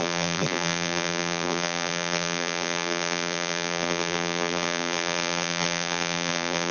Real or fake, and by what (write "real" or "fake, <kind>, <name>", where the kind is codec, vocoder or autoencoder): fake, vocoder, BigVGAN v2